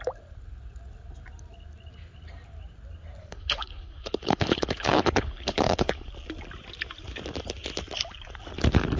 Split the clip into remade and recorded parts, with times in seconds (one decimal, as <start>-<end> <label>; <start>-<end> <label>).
0.0-3.2 recorded; 3.2-6.1 remade; 6.1-9.0 recorded